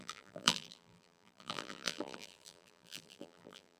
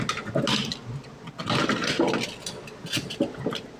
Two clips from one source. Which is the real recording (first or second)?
second